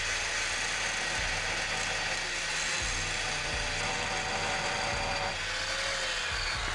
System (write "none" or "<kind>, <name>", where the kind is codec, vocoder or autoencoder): none